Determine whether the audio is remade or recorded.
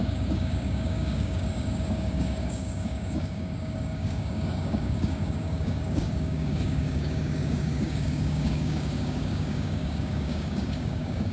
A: remade